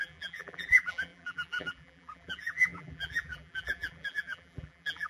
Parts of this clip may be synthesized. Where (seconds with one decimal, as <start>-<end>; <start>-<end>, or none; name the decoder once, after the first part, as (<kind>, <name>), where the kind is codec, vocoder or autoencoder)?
0.0-5.1 (vocoder, BigVGAN v2)